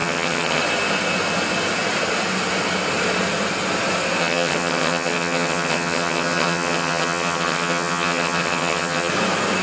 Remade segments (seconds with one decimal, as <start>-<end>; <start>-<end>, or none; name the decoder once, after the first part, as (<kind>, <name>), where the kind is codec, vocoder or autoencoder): 0.0-0.6 (vocoder, HiFi-GAN); 4.2-9.1